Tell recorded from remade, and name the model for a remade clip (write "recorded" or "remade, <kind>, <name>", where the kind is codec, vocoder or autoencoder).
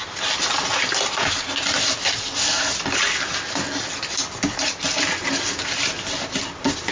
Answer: recorded